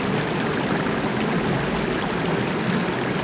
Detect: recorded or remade recorded